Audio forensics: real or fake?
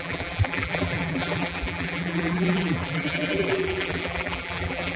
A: fake